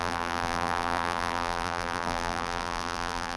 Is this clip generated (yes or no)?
yes